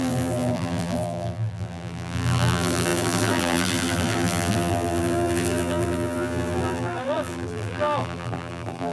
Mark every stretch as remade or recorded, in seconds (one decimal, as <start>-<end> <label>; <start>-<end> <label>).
0.0-8.9 remade